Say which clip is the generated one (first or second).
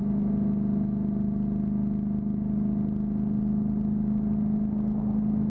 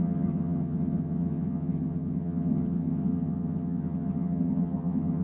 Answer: second